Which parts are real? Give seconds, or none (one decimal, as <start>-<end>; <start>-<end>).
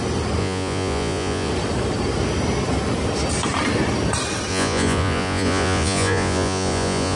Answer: 0.0-0.4; 1.5-4.5